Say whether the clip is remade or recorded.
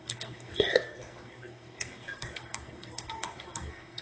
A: remade